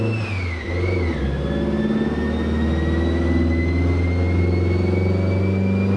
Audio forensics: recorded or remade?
recorded